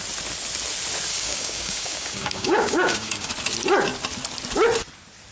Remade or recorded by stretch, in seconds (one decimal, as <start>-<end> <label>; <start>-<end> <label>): 0.0-1.1 recorded; 1.1-3.3 remade; 3.3-5.3 recorded